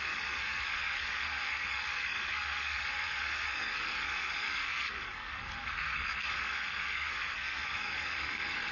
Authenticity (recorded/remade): remade